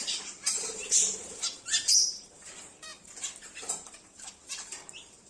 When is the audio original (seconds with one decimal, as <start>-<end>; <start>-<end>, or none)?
2.9-3.7